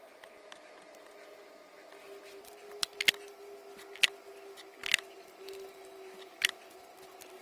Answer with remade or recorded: recorded